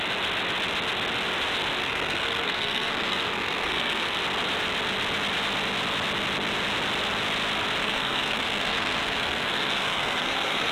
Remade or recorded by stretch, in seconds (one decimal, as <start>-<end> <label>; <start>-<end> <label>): 0.0-1.8 recorded; 1.8-4.2 remade; 4.2-7.8 recorded; 7.8-10.7 remade